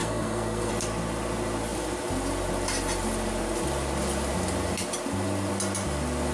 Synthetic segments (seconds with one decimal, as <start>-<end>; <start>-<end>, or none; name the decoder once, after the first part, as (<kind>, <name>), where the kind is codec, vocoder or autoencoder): 0.0-0.7 (codec, SNAC)